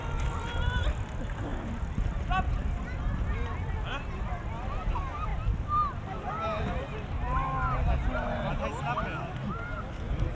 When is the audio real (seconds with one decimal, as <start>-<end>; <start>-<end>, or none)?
0.0-1.5; 2.1-10.3

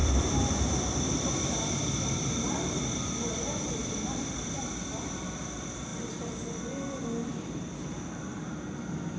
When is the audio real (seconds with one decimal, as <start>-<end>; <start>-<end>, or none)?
5.1-7.3; 8.4-9.2

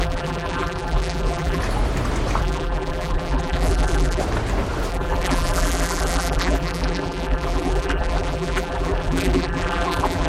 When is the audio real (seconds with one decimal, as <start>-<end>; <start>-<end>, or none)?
1.6-2.4; 4.2-4.9

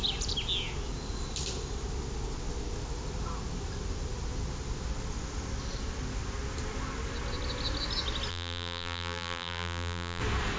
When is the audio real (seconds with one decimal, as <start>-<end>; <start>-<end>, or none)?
0.0-8.3; 10.2-10.6

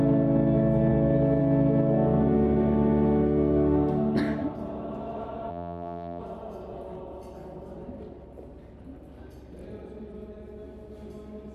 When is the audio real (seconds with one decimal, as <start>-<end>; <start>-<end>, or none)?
0.0-5.5; 6.2-11.5